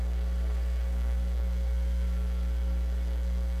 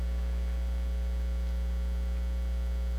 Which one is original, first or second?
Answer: second